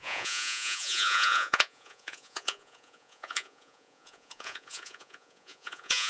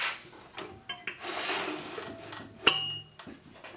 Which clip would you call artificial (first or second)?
first